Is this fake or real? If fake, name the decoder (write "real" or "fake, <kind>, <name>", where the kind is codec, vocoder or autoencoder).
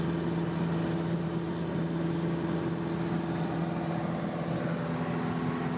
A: real